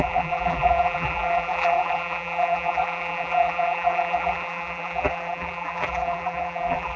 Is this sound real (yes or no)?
no